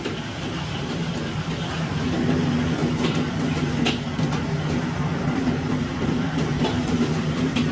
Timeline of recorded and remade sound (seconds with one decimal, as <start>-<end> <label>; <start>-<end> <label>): 0.0-2.8 remade; 2.8-5.3 recorded; 5.3-7.7 remade